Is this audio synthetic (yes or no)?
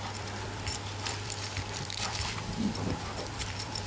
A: yes